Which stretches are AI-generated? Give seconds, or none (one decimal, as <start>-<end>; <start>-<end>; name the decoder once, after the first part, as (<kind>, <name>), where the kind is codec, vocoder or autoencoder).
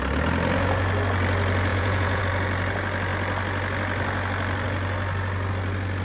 1.7-2.2 (vocoder, Vocos)